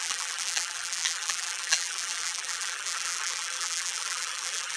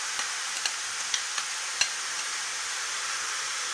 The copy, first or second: first